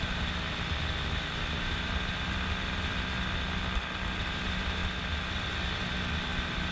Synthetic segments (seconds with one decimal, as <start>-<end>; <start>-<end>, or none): none